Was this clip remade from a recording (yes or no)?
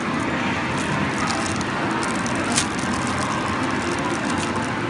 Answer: no